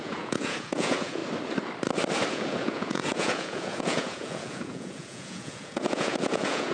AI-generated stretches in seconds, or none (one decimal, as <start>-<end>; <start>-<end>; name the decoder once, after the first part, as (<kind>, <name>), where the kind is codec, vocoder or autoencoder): 0.0-1.2 (vocoder, Vocos); 2.3-6.7